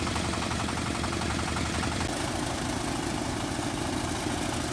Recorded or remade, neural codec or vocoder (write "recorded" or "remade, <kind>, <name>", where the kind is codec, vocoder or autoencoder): recorded